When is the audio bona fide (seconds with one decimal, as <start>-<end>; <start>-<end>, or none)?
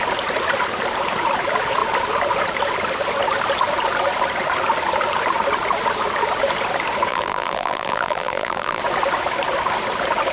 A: 0.0-7.1; 8.8-10.3